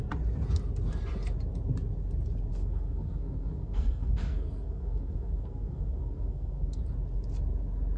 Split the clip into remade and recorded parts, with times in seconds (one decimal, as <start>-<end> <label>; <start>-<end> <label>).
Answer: 0.0-2.5 recorded; 2.5-6.8 remade; 6.8-8.0 recorded